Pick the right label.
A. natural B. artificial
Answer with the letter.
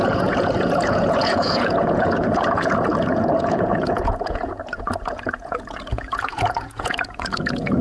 B